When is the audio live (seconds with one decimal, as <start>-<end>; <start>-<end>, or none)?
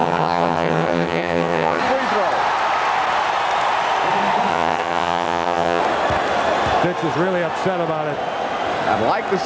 1.8-4.5; 5.8-9.5